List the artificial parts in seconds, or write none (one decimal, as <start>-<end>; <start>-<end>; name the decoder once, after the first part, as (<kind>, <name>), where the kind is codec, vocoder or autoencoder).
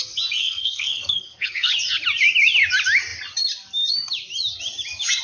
0.4-1.7 (codec, SNAC)